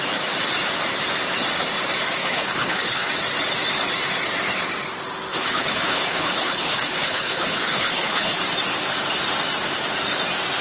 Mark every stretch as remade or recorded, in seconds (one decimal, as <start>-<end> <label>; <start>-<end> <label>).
0.0-2.2 recorded; 2.2-3.1 remade; 3.1-5.3 recorded; 5.3-8.4 remade; 8.4-10.6 recorded